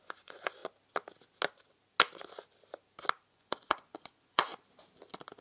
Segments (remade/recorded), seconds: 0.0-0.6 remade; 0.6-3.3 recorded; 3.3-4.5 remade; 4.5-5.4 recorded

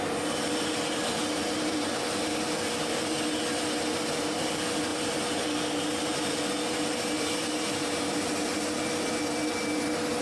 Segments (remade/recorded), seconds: 0.0-10.2 recorded

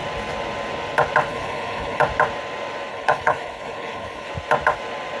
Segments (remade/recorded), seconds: 0.0-1.3 recorded; 1.3-2.0 remade; 2.0-2.9 recorded; 2.9-4.3 remade; 4.3-5.2 recorded